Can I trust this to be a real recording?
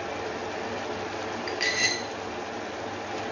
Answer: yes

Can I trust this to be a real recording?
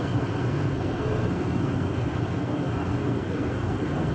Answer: no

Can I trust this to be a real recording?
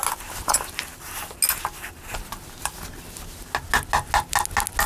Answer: yes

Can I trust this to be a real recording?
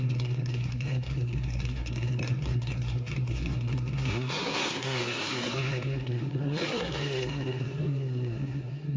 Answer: no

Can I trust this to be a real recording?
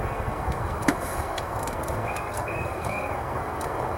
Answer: no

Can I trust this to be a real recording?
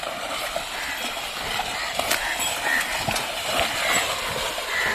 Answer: yes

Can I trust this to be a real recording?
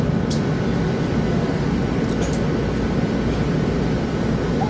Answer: yes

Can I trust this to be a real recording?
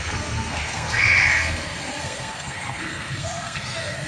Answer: no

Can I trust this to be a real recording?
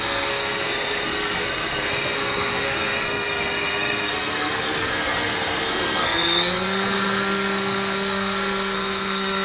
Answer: no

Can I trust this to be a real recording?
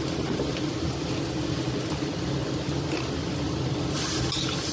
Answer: yes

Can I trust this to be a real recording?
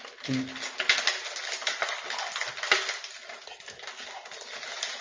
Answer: yes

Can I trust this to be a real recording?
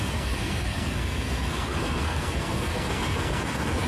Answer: no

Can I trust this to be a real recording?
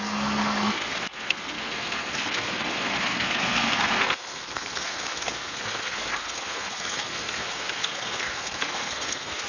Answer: no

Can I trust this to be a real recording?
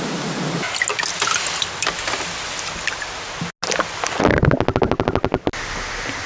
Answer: yes